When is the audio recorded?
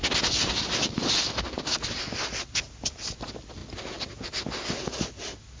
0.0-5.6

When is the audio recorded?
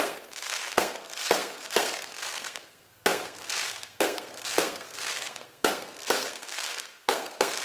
none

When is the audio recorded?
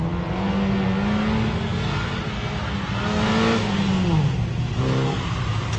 0.0-5.8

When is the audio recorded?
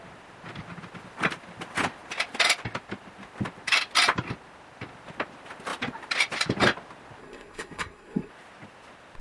0.0-7.2; 8.3-9.2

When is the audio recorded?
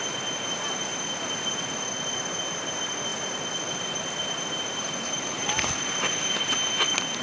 0.0-7.2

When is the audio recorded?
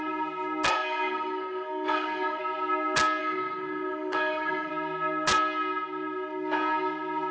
0.0-0.7; 2.4-3.2; 4.7-7.3